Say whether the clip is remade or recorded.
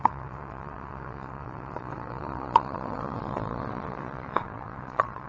remade